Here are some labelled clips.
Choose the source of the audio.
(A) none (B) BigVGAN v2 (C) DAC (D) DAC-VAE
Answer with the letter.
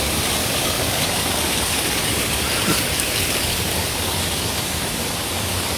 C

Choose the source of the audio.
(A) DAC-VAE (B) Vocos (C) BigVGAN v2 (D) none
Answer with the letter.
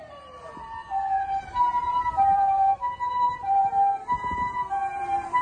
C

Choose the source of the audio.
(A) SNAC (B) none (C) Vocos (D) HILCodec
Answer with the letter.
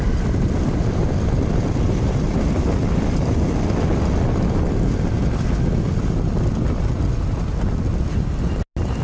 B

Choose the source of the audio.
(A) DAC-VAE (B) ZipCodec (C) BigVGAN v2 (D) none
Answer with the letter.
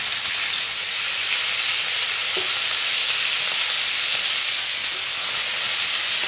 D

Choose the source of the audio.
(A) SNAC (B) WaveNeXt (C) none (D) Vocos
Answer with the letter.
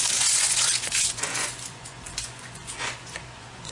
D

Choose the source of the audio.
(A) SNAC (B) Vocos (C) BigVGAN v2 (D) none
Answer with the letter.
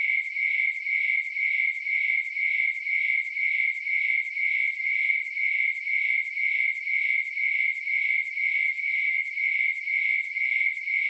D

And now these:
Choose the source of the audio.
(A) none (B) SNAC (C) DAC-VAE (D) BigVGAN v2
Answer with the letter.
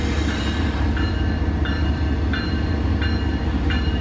D